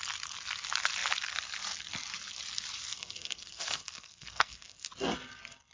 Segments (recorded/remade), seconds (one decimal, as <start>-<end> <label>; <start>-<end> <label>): 0.0-2.9 recorded; 2.9-4.9 remade; 4.9-5.7 recorded

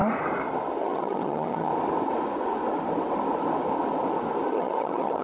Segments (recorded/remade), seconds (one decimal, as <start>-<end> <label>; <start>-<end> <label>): 0.0-0.8 recorded; 0.8-1.7 remade; 1.7-4.5 recorded; 4.5-5.2 remade

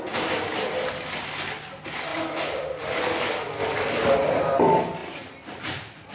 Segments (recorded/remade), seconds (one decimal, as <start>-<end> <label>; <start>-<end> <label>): 0.0-3.6 recorded; 3.6-4.6 remade; 4.6-6.1 recorded

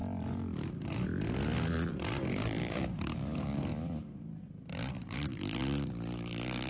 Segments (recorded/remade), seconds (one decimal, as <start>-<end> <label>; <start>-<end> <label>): 0.0-1.9 recorded; 1.9-3.7 remade; 3.7-4.9 recorded; 4.9-5.6 remade; 5.6-6.7 recorded

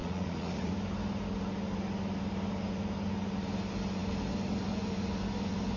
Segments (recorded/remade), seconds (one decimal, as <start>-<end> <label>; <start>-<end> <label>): 0.0-0.7 remade; 0.7-5.8 recorded

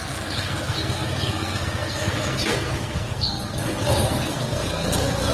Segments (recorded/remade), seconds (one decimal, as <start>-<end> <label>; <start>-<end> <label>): 0.0-5.3 remade

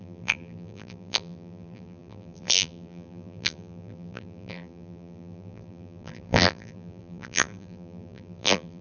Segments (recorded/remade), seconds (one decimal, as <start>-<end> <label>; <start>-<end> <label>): 0.0-8.8 remade

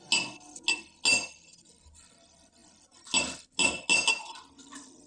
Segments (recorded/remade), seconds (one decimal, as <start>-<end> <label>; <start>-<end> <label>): 0.0-5.1 recorded